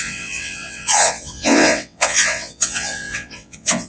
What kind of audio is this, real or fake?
fake